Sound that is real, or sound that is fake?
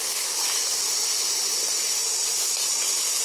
real